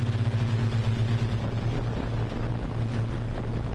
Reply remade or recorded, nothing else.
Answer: recorded